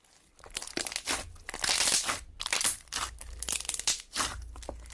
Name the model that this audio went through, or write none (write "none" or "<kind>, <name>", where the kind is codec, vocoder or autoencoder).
none